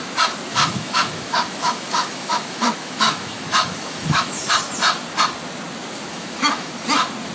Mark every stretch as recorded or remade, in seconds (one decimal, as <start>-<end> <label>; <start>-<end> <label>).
0.0-0.5 recorded; 0.5-4.5 remade; 4.5-6.1 recorded; 6.1-6.7 remade; 6.7-7.3 recorded